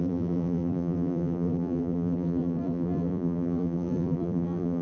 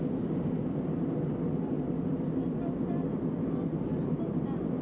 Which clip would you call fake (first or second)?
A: first